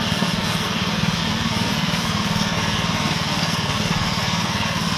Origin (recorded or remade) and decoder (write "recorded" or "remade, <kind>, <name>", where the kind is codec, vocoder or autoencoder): remade, codec, SNAC